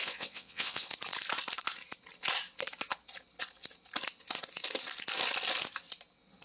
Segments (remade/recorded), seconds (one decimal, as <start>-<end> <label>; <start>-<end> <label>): 0.0-0.9 remade; 0.9-6.4 recorded